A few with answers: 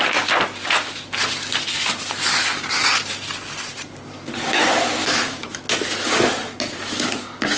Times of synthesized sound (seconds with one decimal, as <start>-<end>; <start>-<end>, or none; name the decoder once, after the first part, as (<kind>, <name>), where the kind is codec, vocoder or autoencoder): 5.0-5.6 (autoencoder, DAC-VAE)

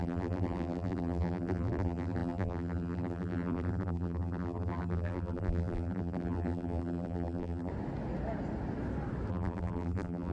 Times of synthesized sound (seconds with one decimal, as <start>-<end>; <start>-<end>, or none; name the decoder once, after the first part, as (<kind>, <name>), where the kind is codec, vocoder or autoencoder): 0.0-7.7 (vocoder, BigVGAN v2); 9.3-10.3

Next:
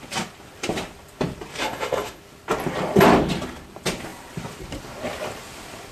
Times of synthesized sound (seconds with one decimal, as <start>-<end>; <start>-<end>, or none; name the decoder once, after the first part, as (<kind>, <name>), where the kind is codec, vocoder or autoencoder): 1.6-2.2 (autoencoder, DAC-VAE)